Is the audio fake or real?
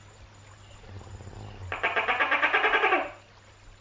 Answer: real